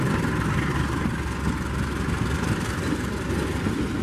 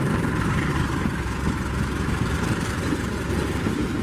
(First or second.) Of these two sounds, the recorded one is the first